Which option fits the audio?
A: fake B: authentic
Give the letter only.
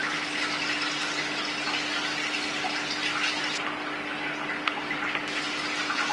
B